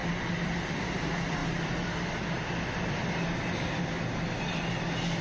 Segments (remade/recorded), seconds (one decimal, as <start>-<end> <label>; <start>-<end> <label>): 0.0-5.2 recorded